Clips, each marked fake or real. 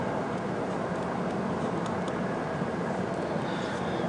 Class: fake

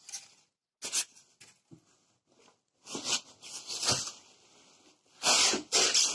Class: real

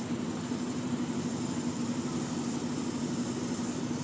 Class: real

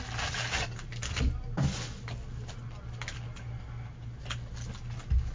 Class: real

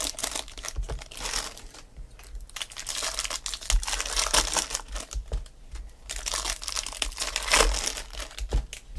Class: real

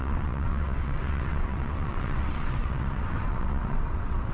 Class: fake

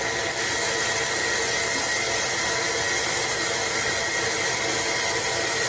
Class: real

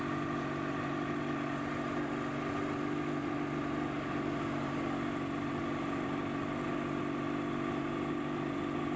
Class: real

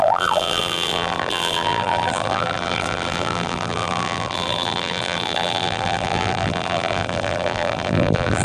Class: fake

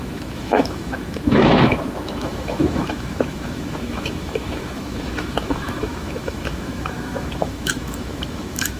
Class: fake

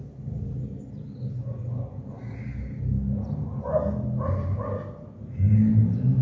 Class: real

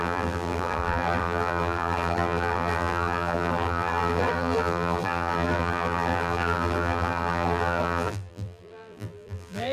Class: fake